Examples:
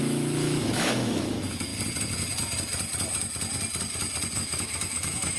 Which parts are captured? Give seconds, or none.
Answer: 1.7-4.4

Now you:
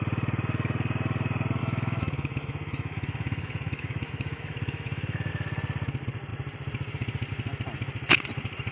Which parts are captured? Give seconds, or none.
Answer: 0.0-1.6; 5.3-8.7

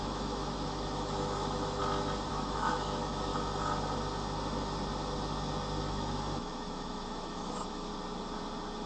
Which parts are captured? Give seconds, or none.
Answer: 1.8-2.3; 3.3-5.8; 7.9-8.9

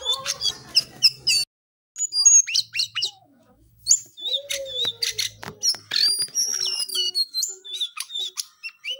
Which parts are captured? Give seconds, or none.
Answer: 0.0-2.9; 3.7-6.9; 8.2-9.0